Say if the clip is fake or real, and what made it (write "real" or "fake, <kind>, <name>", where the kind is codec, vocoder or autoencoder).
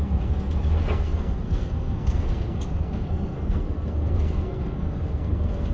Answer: fake, codec, SNAC